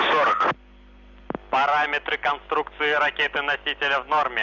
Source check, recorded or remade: recorded